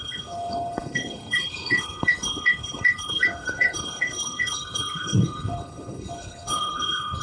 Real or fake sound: fake